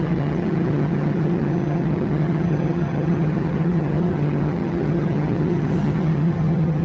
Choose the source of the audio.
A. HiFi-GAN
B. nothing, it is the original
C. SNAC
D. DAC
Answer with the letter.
A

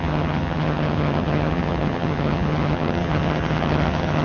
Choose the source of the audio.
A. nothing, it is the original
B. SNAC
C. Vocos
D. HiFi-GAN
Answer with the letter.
D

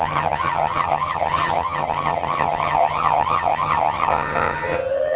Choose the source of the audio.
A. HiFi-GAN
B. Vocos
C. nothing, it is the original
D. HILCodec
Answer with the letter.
A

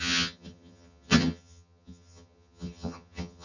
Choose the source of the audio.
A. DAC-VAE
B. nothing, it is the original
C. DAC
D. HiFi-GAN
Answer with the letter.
D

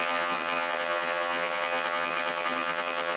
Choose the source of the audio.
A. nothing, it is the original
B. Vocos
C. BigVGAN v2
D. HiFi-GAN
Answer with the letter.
D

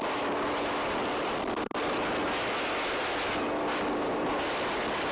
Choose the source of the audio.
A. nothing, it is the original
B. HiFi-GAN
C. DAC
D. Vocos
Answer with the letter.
A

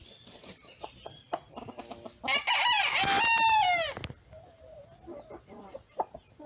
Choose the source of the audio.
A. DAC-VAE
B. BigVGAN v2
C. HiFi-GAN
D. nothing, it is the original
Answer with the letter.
D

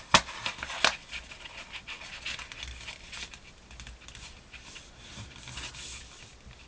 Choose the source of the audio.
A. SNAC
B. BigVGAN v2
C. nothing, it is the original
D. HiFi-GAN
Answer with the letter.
C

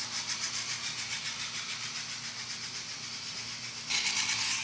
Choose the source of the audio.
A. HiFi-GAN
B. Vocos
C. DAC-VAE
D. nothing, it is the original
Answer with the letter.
D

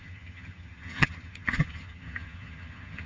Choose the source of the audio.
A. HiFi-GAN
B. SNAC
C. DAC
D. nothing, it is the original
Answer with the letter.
A